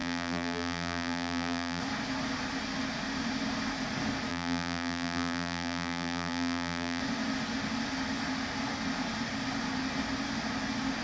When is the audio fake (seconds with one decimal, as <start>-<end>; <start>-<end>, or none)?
0.0-1.8; 4.3-7.0